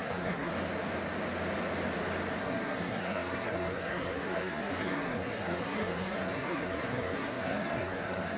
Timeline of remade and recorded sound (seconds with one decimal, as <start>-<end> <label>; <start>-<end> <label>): 0.0-0.5 remade; 0.5-2.4 recorded; 2.4-8.4 remade